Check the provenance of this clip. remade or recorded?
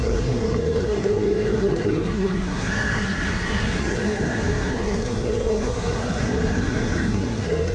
remade